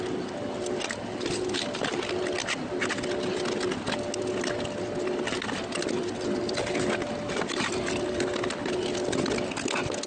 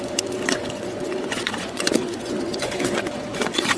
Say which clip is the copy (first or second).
second